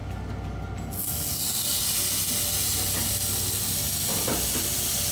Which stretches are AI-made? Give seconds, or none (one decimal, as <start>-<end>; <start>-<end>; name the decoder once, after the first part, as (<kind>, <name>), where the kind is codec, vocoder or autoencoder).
none

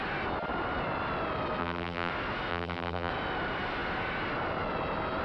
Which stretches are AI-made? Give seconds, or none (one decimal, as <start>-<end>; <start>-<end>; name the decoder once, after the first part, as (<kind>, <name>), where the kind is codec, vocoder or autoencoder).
1.6-2.1 (vocoder, BigVGAN v2); 2.5-3.1

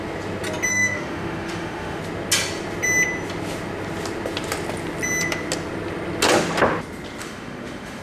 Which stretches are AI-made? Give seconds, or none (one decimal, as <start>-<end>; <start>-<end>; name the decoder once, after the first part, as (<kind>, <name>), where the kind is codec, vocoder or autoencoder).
0.7-2.0 (autoencoder, DAC-VAE); 7.2-8.0